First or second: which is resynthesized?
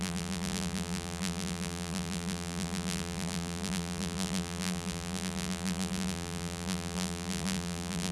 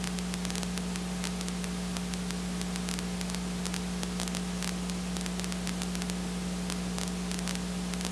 first